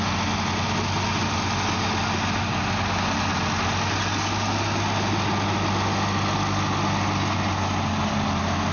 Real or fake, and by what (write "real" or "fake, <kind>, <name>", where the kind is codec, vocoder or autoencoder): real